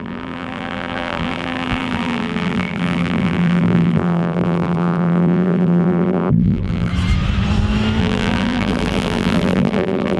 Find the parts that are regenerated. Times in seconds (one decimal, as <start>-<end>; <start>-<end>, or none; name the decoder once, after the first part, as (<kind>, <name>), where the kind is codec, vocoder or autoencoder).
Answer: 0.0-6.9 (vocoder, BigVGAN v2); 8.0-10.2